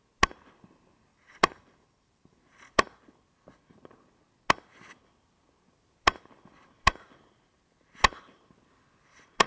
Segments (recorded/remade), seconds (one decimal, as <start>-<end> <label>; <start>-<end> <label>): 0.0-1.1 recorded; 1.1-2.4 remade; 2.4-9.5 recorded